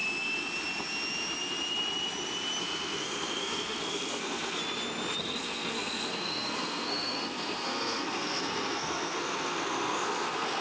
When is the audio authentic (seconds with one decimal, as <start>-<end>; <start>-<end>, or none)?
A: 0.0-2.6; 4.6-5.2